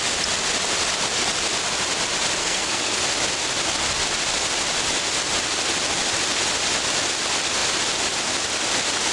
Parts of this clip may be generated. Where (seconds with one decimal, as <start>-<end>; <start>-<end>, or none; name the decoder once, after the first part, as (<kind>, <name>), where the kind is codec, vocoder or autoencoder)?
2.4-3.0 (codec, SNAC)